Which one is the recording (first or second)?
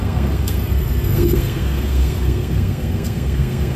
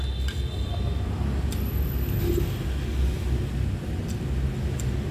second